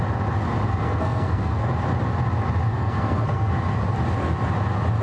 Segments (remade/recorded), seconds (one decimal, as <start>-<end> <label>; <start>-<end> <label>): 0.0-0.8 recorded; 0.8-1.6 remade; 1.6-2.7 recorded; 2.7-3.5 remade; 3.5-5.0 recorded